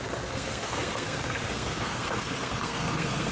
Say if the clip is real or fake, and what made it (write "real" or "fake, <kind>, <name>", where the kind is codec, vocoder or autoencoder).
fake, codec, SNAC